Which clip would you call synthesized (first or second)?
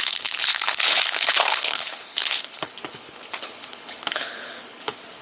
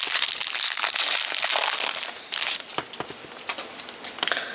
first